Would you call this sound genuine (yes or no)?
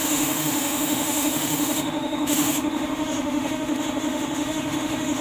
no